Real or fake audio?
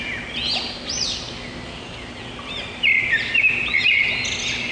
real